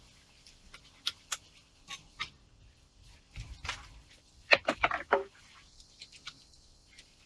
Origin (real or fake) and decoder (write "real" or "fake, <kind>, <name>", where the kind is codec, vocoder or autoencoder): fake, vocoder, BigVGAN v2